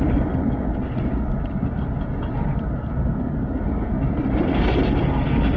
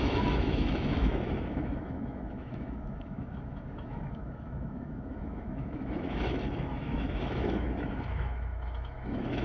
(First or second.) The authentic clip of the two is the first